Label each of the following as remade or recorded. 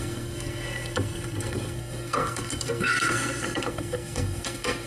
remade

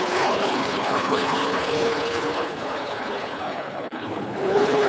remade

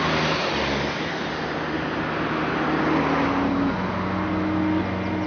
recorded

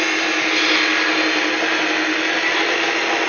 recorded